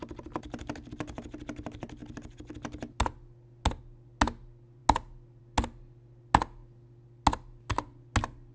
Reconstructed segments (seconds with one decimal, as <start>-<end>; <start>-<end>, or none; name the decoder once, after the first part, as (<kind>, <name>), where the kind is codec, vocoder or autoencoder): none